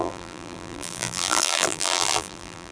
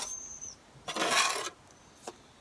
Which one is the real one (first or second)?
second